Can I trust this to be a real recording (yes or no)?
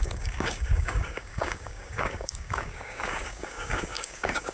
no